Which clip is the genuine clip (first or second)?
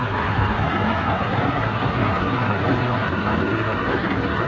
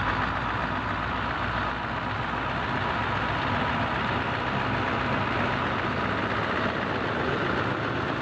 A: second